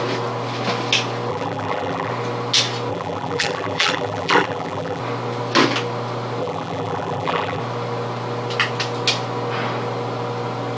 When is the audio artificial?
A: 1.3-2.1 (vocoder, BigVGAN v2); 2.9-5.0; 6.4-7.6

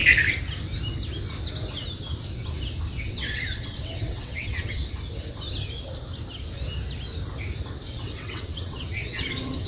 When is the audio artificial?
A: 3.0-4.8 (vocoder, WaveNeXt); 7.9-9.7